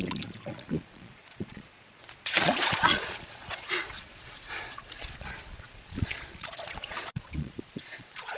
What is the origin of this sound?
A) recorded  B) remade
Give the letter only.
B